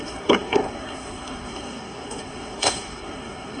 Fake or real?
fake